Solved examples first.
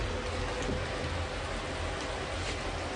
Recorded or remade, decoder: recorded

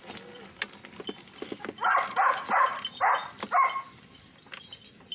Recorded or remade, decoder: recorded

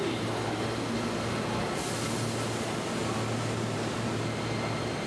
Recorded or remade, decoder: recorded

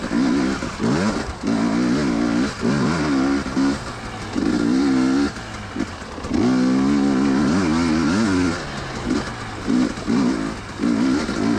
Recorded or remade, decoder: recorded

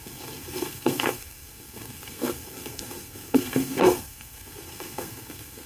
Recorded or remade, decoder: remade, codec, SNAC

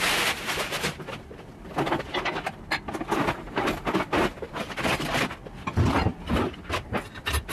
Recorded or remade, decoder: recorded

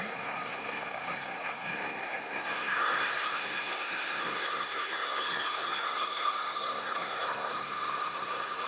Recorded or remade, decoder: remade, codec, SNAC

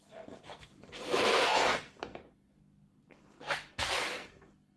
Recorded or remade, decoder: remade, codec, SNAC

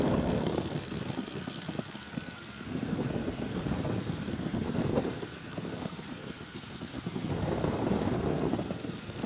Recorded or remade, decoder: remade, codec, SNAC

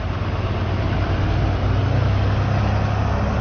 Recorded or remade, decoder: recorded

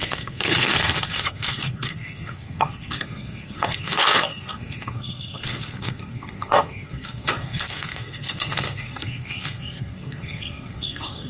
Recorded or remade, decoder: remade, codec, SNAC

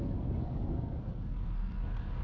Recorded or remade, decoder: remade, codec, SNAC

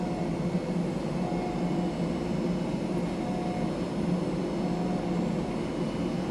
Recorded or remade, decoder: recorded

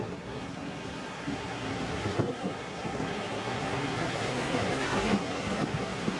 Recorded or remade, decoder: remade, codec, SNAC